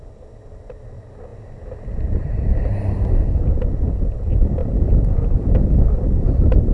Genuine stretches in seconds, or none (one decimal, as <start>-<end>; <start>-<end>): 0.0-6.7